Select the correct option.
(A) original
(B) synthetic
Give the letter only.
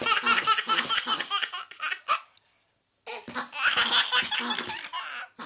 A